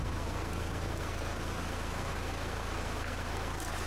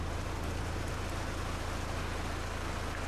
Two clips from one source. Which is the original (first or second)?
second